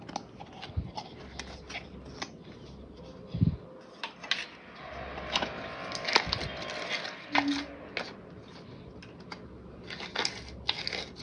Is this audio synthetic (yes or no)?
no